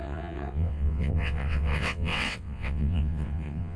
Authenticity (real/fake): fake